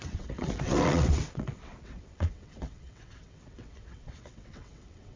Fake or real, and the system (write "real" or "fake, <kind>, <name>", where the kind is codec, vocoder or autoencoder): fake, vocoder, WaveNeXt